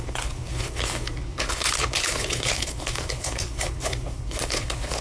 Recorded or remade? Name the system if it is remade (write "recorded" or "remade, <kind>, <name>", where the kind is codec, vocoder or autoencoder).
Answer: remade, codec, HILCodec